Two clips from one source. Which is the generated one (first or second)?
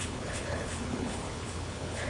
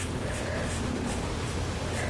first